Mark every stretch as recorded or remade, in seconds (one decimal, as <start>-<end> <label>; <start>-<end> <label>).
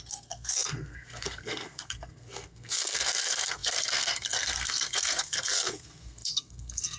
0.0-7.0 remade